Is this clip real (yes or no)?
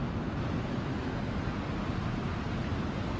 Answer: yes